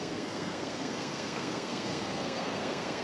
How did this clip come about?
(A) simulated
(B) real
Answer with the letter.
A